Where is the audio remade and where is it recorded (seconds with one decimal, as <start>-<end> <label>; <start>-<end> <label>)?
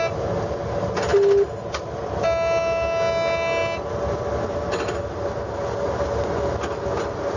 0.0-7.4 recorded